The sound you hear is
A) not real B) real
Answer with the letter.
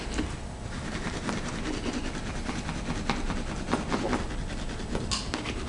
B